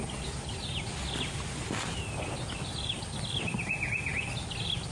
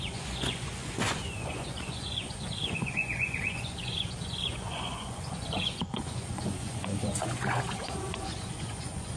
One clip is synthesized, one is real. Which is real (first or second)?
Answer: first